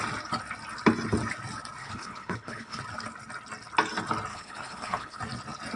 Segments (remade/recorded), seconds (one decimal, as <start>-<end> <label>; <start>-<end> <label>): 0.0-1.8 recorded; 1.8-2.8 remade; 2.8-4.3 recorded; 4.3-5.2 remade; 5.2-5.8 recorded